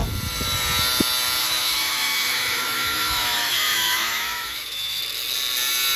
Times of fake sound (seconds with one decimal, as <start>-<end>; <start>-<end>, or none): 1.4-5.0